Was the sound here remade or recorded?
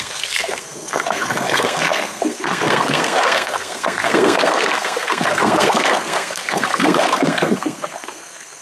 remade